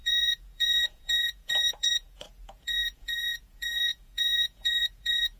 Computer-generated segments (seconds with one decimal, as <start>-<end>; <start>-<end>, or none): 0.0-5.4